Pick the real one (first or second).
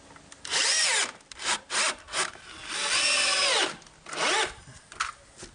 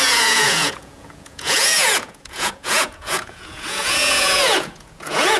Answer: first